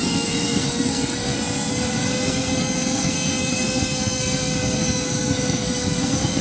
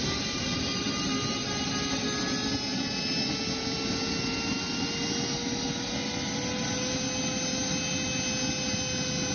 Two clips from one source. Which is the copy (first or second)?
first